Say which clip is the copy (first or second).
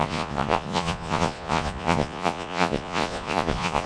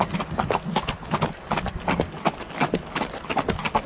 first